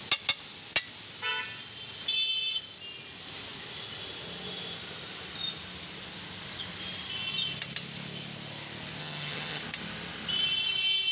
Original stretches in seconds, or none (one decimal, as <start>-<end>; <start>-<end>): 0.0-9.0; 9.6-11.1